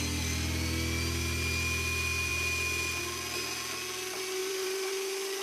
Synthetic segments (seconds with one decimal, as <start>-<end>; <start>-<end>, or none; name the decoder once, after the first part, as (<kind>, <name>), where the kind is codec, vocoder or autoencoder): 4.4-4.9 (vocoder, BigVGAN v2)